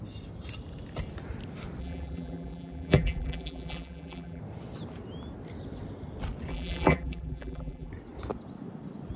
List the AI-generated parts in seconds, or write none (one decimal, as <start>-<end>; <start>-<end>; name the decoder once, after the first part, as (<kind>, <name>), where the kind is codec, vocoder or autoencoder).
1.8-4.4 (vocoder, BigVGAN v2); 6.5-7.9